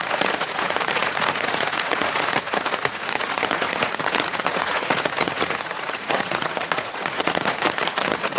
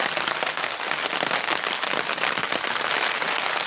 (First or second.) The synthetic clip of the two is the first